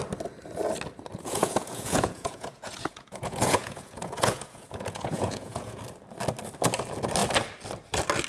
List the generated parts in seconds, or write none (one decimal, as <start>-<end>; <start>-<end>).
1.1-5.8